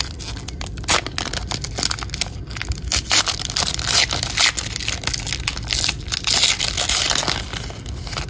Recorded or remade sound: recorded